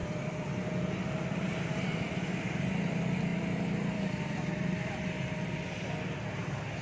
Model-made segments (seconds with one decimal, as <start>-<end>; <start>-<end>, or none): 0.0-6.8